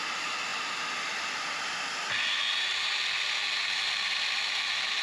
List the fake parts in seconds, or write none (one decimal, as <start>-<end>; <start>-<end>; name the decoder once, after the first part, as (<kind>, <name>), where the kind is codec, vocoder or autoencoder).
none